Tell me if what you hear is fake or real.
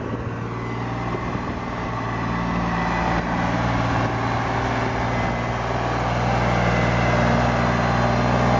real